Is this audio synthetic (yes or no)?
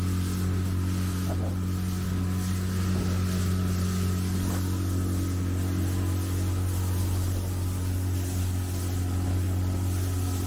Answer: no